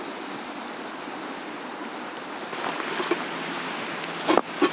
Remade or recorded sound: recorded